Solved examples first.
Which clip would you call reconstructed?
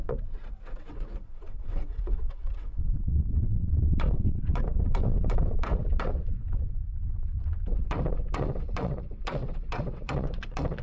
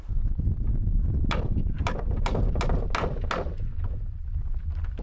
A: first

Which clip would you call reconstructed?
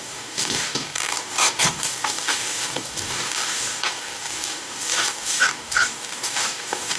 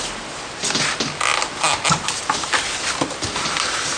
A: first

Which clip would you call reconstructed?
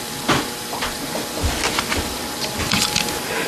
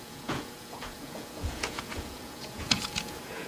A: second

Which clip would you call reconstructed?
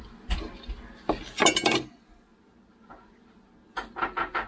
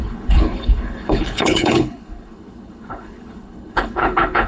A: second